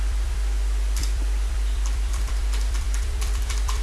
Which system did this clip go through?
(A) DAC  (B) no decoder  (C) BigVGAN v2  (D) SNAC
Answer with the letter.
C